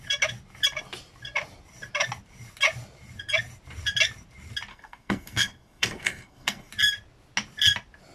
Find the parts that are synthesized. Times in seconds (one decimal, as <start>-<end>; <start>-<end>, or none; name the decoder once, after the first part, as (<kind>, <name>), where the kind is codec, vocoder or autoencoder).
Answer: 4.7-6.7 (codec, SNAC)